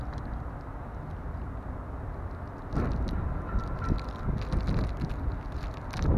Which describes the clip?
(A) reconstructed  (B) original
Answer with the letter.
B